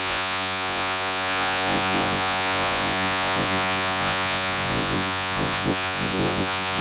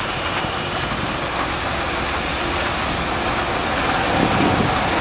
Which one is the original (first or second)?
second